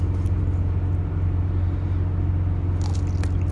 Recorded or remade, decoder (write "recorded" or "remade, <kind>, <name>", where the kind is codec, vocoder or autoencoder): recorded